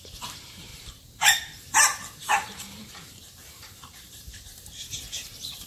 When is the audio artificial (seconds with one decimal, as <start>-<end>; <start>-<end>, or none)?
0.0-5.7